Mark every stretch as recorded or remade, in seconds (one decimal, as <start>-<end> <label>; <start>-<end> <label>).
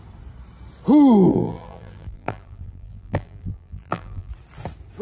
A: 0.0-1.3 recorded; 1.3-4.3 remade; 4.3-5.0 recorded